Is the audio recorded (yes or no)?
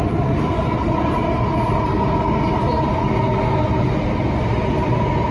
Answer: yes